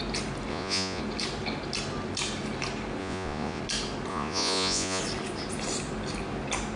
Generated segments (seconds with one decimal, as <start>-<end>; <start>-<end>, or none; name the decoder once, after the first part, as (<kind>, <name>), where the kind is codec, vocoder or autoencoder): 0.5-1.0 (vocoder, Vocos); 3.0-3.6; 4.1-5.0